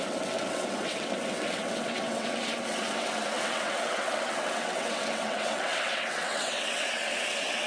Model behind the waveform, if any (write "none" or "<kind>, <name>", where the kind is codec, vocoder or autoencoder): vocoder, WaveNeXt